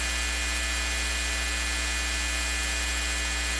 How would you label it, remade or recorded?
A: recorded